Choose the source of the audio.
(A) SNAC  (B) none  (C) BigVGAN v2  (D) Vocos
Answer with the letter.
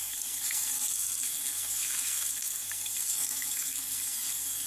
A